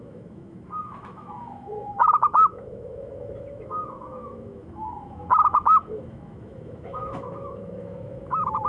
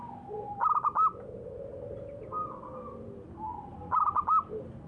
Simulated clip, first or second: first